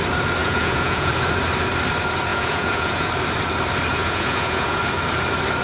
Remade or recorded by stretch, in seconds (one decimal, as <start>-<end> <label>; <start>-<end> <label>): 0.0-0.4 recorded; 0.4-1.1 remade; 1.1-2.3 recorded; 2.3-3.1 remade; 3.1-3.9 recorded; 3.9-4.8 remade; 4.8-5.6 recorded

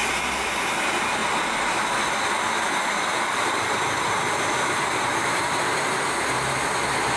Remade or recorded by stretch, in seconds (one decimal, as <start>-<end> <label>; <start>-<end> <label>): 0.0-3.1 recorded; 3.1-5.8 remade; 5.8-7.2 recorded

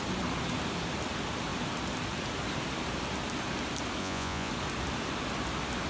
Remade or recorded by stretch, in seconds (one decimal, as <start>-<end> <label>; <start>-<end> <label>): 0.0-4.0 recorded; 4.0-4.5 remade; 4.5-5.9 recorded

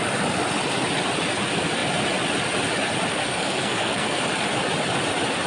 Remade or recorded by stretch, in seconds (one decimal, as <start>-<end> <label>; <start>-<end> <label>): 0.0-3.1 recorded; 3.1-4.2 remade; 4.2-5.5 recorded

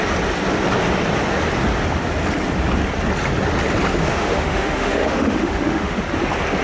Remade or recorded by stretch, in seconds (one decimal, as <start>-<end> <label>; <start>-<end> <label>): 0.0-4.0 recorded; 4.0-6.0 remade; 6.0-6.6 recorded